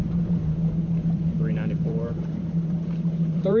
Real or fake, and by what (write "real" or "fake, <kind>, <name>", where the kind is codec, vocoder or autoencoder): fake, vocoder, BigVGAN v2